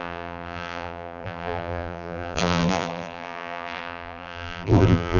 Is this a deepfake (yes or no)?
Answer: yes